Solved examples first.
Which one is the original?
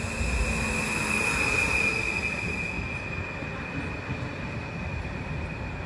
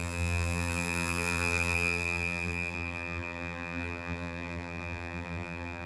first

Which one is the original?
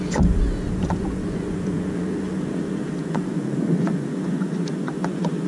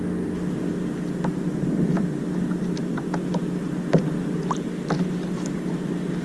second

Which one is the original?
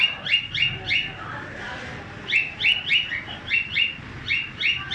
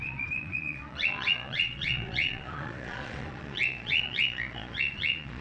first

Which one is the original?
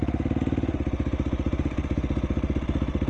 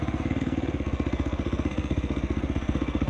first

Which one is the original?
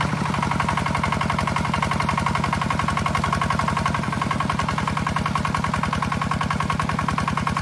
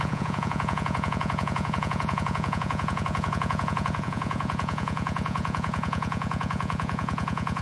first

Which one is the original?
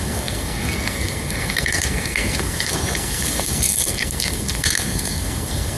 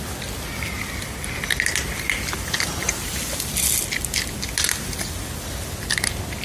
second